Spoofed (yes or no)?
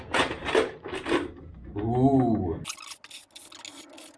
no